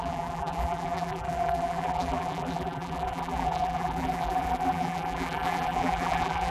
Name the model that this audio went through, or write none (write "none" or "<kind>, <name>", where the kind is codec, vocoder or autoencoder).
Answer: vocoder, BigVGAN v2